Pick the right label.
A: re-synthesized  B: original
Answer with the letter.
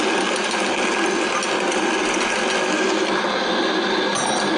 B